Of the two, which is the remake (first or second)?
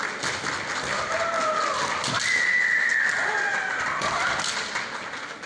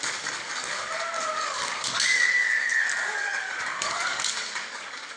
second